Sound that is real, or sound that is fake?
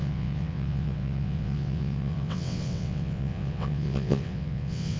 fake